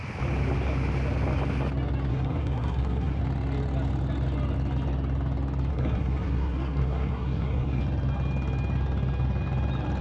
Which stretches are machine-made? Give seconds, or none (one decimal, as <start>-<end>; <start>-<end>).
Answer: 2.1-3.2; 5.7-7.8